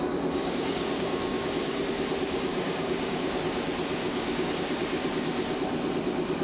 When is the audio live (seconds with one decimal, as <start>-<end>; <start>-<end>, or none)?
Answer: 0.0-0.4; 1.8-2.5; 3.4-4.0; 4.5-6.4

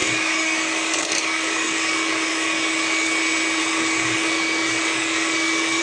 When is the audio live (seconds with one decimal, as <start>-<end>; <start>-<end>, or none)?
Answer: 3.2-3.6

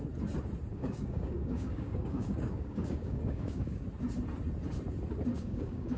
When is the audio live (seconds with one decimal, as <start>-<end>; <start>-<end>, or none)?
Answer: 0.0-0.7; 3.8-5.3

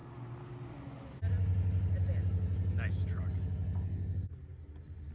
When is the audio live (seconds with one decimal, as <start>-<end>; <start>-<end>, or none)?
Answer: 0.0-5.1

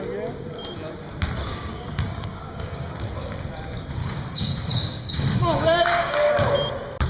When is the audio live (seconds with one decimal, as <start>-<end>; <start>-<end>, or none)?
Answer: 0.0-1.5; 2.9-4.0; 6.3-7.1